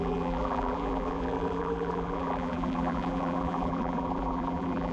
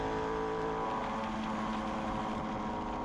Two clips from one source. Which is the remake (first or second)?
first